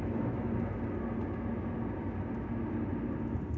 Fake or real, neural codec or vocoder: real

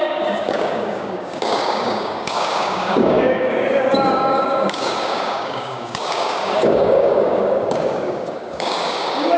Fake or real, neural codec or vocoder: fake, codec, DAC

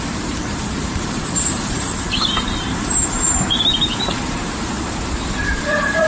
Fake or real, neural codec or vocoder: fake, vocoder, BigVGAN v2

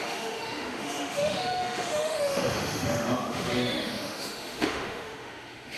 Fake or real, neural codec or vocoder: fake, autoencoder, DAC-VAE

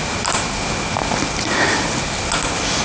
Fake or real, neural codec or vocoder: real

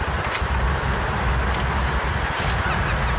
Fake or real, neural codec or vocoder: real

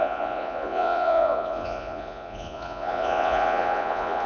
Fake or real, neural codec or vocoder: fake, vocoder, Vocos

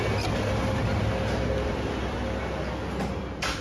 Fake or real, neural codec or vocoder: real